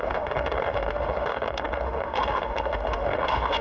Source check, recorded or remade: remade